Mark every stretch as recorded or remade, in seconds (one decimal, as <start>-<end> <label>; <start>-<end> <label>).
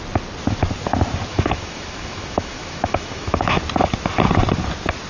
0.0-1.3 recorded; 1.3-3.6 remade; 3.6-5.1 recorded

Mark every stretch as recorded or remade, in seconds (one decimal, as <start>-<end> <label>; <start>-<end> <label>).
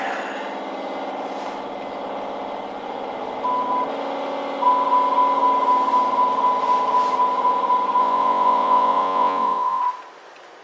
0.0-8.0 recorded; 8.0-9.8 remade; 9.8-10.6 recorded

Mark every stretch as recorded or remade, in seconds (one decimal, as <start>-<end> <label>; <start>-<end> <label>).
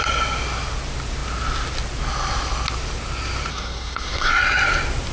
0.0-3.5 recorded; 3.5-4.3 remade; 4.3-5.1 recorded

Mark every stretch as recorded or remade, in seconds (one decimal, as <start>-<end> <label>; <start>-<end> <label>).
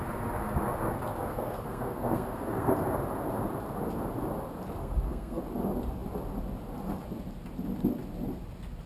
0.0-1.3 recorded; 1.3-2.7 remade; 2.7-4.8 recorded; 4.8-5.4 remade; 5.4-8.9 recorded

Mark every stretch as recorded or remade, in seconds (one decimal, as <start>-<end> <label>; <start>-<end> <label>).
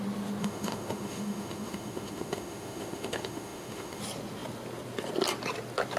0.0-0.4 recorded; 0.4-4.0 remade; 4.0-6.0 recorded